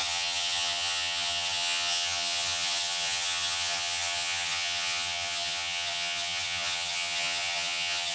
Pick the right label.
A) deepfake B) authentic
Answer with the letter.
A